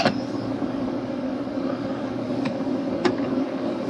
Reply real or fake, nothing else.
fake